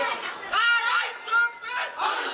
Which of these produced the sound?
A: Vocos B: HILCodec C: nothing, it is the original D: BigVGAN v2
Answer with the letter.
C